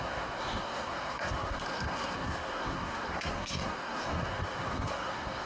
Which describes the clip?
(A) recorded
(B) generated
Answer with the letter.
B